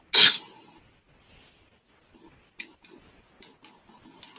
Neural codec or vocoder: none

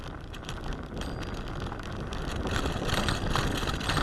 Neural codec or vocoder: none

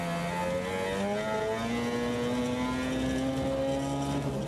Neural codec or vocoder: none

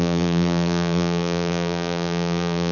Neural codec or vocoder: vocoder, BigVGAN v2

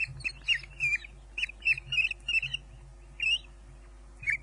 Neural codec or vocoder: none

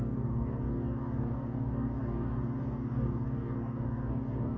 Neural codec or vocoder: codec, DAC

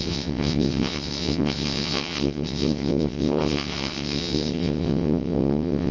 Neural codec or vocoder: vocoder, WaveNeXt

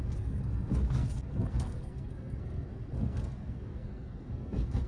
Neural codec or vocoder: codec, SNAC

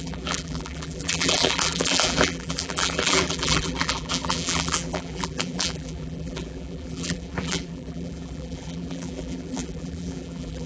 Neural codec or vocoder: vocoder, BigVGAN v2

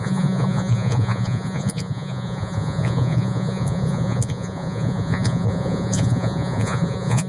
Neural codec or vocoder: vocoder, Vocos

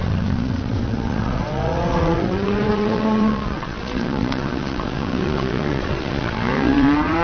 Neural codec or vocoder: vocoder, WaveNeXt